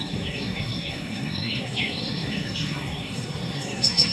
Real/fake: fake